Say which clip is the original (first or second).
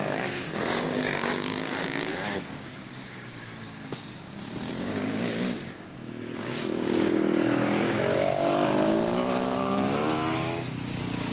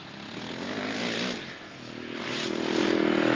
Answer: second